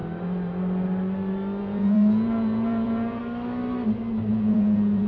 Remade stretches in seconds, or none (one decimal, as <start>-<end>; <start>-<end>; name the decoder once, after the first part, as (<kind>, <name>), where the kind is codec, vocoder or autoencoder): 1.6-3.2 (vocoder, Vocos); 4.3-5.1